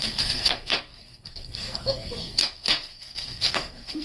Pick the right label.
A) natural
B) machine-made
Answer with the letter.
B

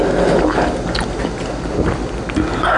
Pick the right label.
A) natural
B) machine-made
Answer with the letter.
A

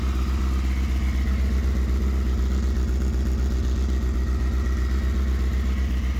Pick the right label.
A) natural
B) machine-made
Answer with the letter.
A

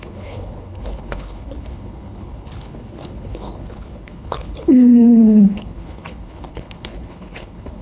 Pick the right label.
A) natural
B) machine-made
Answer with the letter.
B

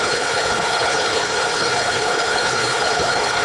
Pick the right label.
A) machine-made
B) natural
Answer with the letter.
A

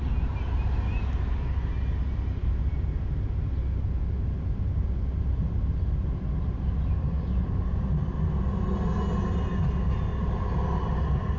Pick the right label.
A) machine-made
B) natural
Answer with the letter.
B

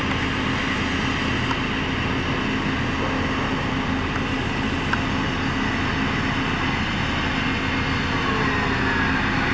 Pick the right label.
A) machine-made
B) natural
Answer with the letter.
B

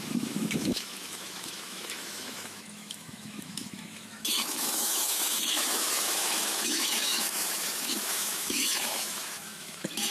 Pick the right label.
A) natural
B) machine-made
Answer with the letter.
B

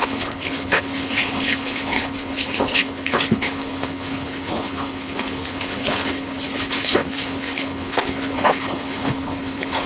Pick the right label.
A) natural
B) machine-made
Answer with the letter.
B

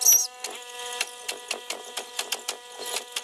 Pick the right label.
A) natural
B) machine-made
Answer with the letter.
A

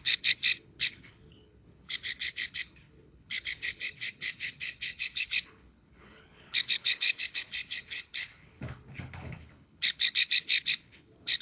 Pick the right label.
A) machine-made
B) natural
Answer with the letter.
A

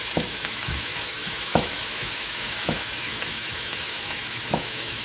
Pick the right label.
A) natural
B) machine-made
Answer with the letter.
B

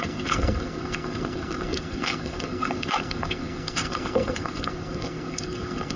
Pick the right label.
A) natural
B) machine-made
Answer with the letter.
B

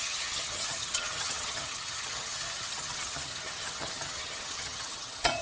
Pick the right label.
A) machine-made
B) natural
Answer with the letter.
A